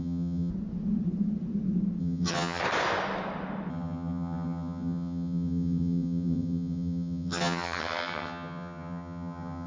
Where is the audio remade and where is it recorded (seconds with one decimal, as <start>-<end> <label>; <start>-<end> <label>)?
0.0-0.5 remade; 0.5-2.0 recorded; 2.0-2.6 remade; 2.6-3.7 recorded; 3.7-9.7 remade